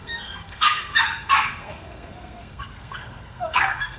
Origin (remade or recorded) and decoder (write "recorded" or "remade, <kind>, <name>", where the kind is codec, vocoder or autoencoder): remade, codec, SNAC